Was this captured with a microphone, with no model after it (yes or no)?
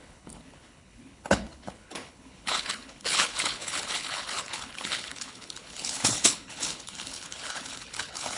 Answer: no